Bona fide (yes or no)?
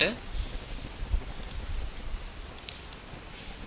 yes